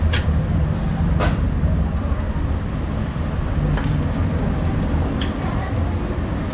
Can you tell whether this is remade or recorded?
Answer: recorded